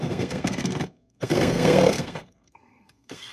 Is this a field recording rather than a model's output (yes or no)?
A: no